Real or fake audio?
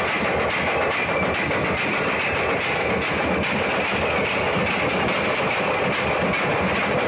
real